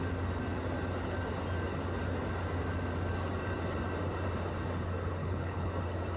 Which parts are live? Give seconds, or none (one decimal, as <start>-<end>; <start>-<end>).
0.0-5.2; 5.7-6.2